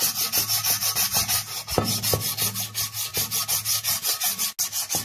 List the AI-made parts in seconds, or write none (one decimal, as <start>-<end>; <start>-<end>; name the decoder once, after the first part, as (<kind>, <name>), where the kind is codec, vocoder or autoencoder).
none